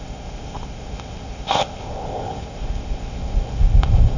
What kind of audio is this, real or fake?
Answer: fake